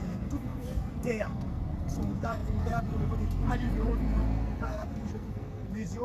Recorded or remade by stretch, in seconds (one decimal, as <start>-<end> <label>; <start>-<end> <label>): 0.0-6.0 remade